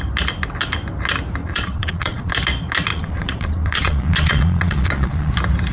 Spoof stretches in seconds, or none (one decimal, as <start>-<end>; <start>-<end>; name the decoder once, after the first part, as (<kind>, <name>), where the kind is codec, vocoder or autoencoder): 1.4-2.3 (vocoder, Vocos); 2.9-5.3